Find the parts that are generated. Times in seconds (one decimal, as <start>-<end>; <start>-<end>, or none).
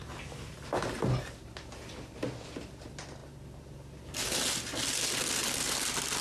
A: none